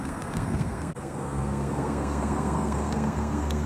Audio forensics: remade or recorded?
remade